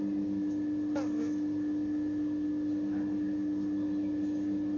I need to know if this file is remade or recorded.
recorded